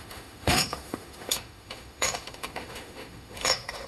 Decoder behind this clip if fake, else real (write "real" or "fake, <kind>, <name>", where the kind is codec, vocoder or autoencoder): fake, autoencoder, DAC-VAE